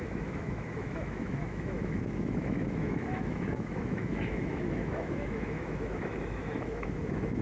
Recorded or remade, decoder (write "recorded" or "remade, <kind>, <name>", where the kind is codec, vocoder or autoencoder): remade, autoencoder, DAC-VAE